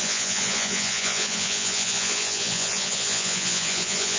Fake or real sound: fake